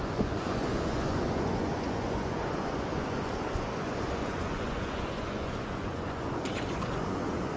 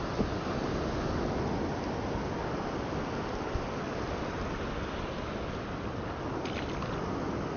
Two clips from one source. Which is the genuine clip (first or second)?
second